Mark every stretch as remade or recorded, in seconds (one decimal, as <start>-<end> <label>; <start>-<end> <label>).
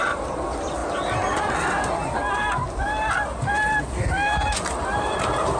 0.0-0.8 remade; 0.8-1.4 recorded; 1.4-2.0 remade; 2.0-5.6 recorded